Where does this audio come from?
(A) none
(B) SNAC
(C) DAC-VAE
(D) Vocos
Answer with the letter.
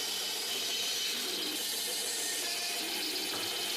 A